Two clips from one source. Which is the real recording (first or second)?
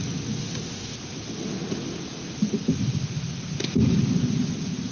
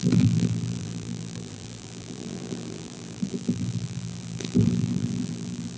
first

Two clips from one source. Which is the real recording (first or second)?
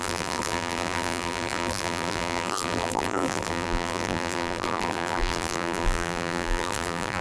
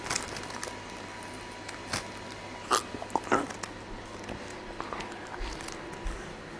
second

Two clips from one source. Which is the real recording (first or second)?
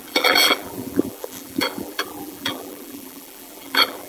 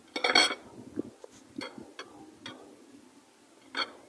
second